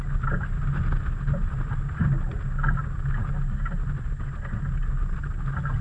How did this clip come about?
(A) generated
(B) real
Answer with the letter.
B